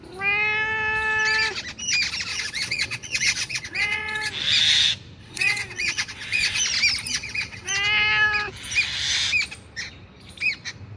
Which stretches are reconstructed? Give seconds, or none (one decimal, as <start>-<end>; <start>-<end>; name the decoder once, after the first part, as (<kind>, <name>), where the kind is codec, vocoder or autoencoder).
2.3-4.3 (vocoder, WaveNeXt); 5.2-6.6; 7.1-7.7